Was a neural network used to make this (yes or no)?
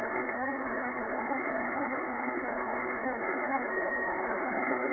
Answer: yes